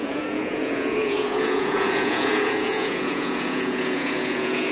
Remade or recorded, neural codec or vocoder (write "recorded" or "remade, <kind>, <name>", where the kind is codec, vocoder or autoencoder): remade, vocoder, Vocos